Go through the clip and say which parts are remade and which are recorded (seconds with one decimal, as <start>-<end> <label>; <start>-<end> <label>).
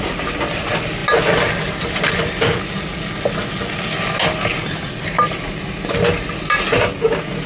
0.0-7.5 recorded